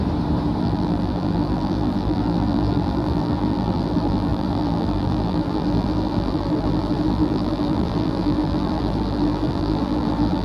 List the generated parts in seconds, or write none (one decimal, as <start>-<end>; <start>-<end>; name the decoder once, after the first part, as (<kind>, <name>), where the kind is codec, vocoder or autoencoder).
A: 0.6-10.4 (vocoder, BigVGAN v2)